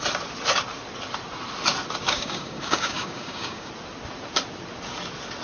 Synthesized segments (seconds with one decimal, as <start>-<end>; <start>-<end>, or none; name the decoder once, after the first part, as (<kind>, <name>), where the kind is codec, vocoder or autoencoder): 2.0-3.7 (codec, DAC)